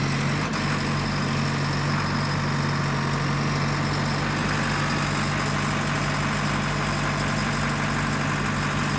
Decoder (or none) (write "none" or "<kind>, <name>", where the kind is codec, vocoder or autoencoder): none